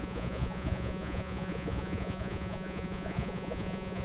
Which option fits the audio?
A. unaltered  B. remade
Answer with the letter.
B